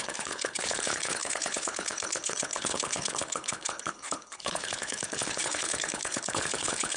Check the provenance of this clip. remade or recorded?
remade